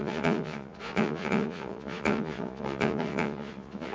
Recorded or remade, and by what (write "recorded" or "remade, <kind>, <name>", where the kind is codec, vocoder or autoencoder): remade, vocoder, Vocos